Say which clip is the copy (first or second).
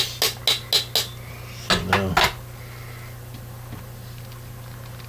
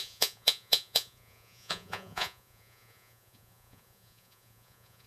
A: second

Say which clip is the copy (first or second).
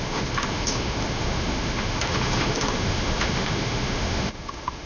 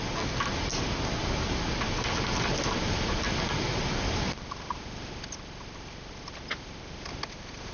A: first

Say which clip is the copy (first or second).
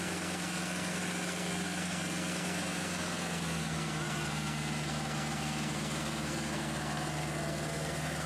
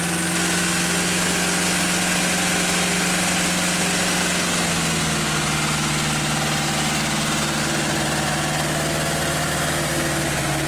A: first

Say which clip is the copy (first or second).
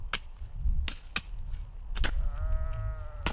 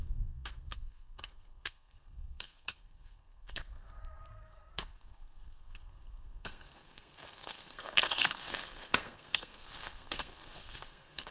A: second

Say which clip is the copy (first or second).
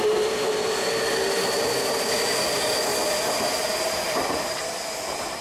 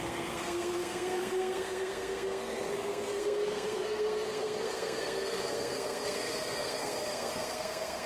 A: second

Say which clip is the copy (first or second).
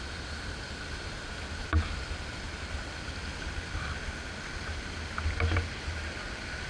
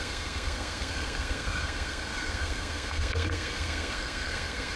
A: second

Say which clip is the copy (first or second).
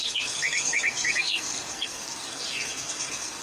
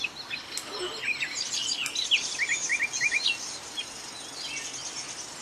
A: first